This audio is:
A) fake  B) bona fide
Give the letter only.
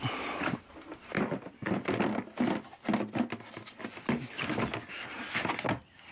B